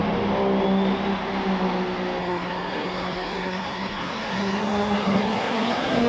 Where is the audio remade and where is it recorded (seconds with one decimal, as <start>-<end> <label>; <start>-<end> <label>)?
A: 0.0-2.2 recorded; 2.2-6.1 remade